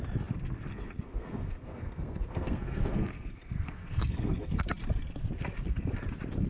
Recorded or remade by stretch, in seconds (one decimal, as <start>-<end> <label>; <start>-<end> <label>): 0.0-0.7 recorded; 0.7-4.6 remade; 4.6-6.5 recorded